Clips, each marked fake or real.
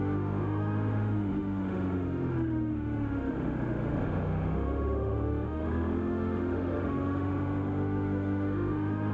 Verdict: fake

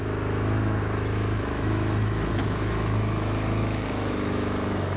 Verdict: fake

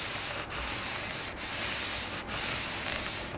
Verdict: real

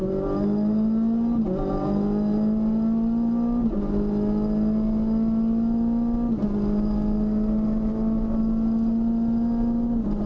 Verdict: real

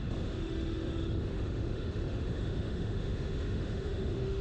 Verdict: fake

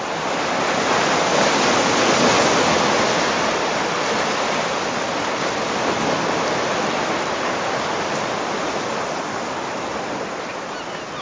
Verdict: real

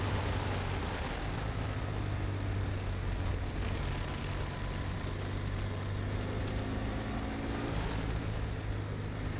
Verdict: real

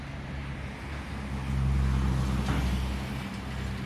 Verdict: real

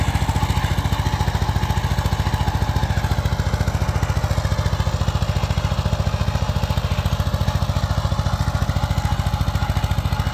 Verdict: real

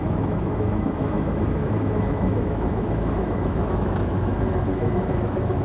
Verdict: fake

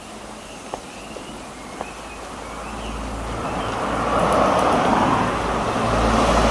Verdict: real